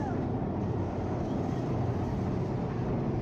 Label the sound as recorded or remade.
recorded